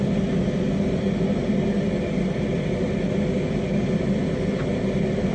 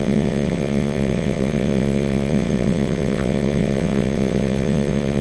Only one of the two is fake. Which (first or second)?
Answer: second